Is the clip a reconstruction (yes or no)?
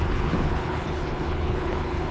yes